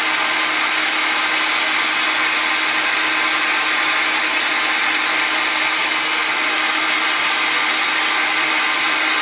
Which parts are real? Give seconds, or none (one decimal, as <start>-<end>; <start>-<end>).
0.0-0.8; 1.3-9.2